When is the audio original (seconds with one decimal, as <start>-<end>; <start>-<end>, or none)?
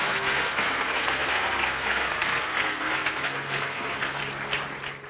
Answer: 4.2-5.1